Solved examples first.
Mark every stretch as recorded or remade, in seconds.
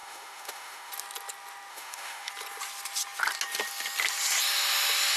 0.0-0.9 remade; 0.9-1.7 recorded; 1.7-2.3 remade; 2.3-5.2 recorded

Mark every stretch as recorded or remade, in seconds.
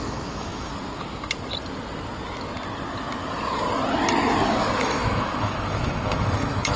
0.0-0.7 remade; 0.7-4.8 recorded; 4.8-6.8 remade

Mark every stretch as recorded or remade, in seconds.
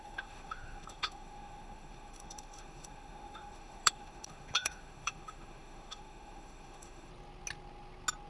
0.0-7.1 remade; 7.1-8.3 recorded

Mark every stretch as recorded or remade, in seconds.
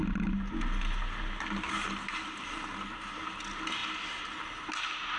0.0-5.2 recorded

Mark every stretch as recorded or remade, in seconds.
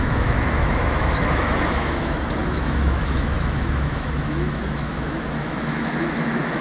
0.0-6.6 remade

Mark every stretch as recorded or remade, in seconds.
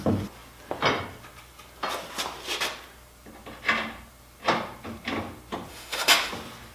0.0-5.7 recorded; 5.7-6.3 remade; 6.3-6.7 recorded